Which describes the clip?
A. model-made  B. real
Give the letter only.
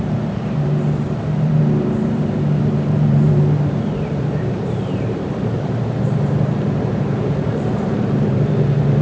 A